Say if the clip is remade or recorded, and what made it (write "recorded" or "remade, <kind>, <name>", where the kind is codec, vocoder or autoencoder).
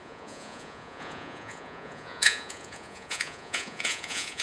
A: remade, vocoder, Vocos